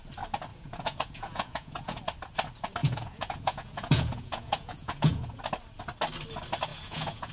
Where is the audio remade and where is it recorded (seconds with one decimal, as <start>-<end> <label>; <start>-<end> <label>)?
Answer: 0.0-0.5 recorded; 0.5-2.0 remade; 2.0-2.8 recorded; 2.8-5.4 remade; 5.4-6.7 recorded; 6.7-7.3 remade